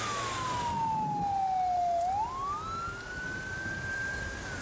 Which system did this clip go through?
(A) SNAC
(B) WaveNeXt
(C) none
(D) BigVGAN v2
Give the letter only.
C